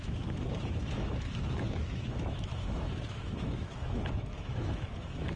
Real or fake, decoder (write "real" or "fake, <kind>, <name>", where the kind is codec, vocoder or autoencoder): fake, autoencoder, DAC-VAE